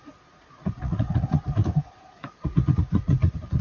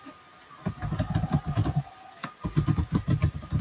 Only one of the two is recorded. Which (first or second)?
second